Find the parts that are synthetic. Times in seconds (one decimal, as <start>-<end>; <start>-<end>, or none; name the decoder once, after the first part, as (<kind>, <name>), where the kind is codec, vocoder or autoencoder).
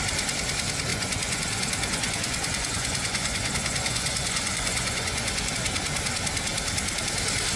0.9-5.5 (vocoder, Vocos)